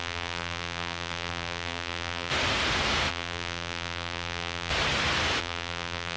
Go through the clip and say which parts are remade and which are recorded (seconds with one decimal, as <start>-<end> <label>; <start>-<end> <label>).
0.0-2.3 remade; 2.3-3.1 recorded; 3.1-4.7 remade; 4.7-5.4 recorded; 5.4-6.2 remade